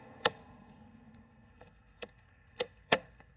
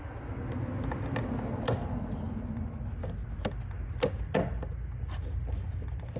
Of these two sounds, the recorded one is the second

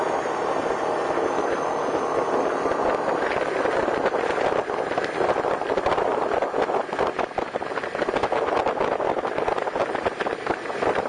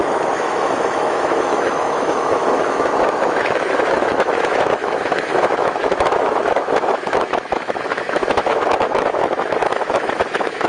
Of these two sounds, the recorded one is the first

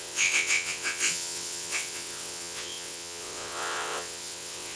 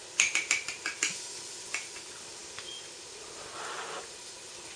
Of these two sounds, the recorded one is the second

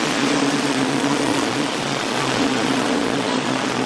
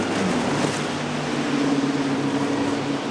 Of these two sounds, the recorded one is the second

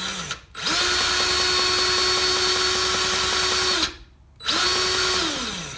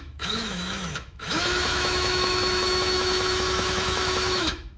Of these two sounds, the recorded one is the first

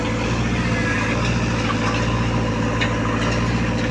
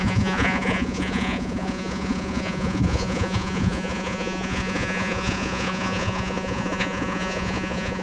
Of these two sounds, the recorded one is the first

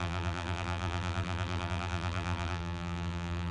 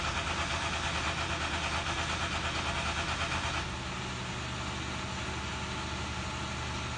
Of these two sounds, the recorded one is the second